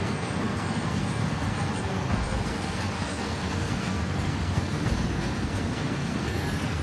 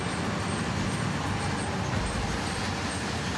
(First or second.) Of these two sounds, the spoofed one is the first